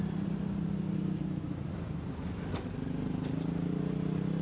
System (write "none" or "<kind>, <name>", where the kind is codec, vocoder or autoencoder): none